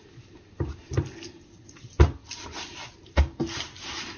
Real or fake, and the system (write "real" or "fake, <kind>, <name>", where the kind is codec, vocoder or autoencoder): real